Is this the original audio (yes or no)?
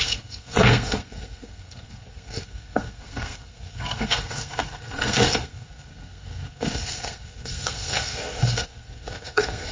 no